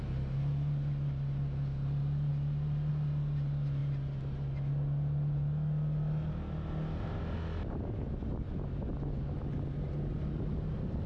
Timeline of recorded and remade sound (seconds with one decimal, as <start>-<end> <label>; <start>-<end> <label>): 0.0-11.1 recorded